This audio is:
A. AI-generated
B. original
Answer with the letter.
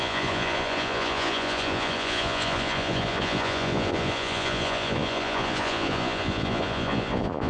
A